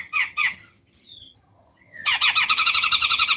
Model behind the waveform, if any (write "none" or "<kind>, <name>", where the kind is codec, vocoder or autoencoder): vocoder, HiFi-GAN